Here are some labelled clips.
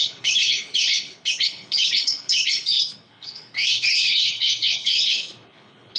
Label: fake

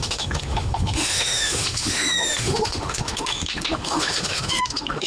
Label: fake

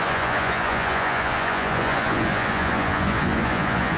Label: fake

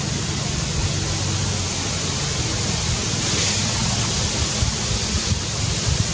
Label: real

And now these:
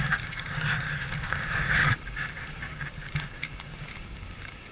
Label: fake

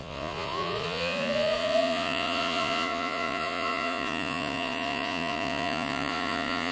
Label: fake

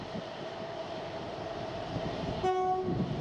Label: fake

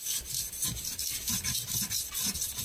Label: real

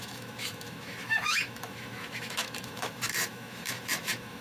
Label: fake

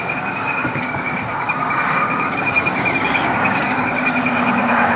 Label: fake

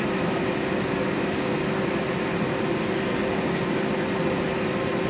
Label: real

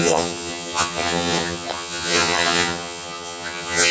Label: fake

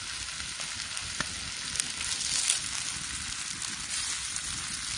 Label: real